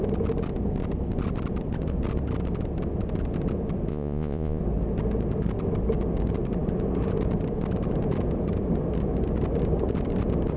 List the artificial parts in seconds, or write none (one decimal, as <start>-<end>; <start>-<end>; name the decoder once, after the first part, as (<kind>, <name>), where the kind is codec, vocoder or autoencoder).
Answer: 3.9-4.6 (vocoder, Vocos)